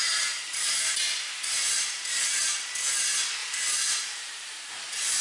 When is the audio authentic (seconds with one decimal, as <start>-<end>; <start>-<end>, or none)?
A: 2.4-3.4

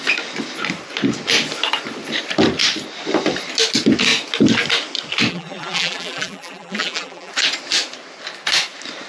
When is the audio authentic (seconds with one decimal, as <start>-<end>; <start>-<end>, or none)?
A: 0.0-5.3; 7.3-9.1

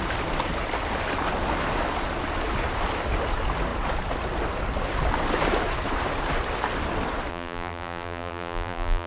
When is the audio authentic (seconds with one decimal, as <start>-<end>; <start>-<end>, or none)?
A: 0.0-7.3

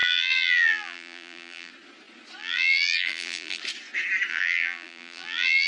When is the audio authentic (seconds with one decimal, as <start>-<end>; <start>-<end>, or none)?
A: 1.7-2.4; 3.6-4.3